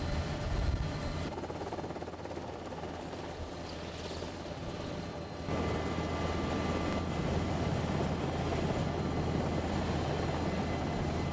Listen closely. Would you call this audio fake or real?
real